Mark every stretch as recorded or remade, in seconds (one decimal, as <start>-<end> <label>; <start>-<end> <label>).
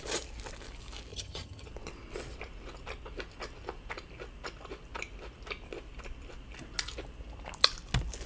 0.0-1.1 recorded; 1.1-1.7 remade; 1.7-8.3 recorded